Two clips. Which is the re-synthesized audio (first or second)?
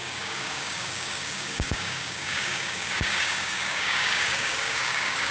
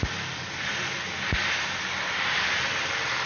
first